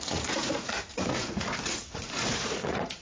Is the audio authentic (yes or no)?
no